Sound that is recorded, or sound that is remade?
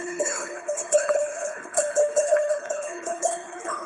remade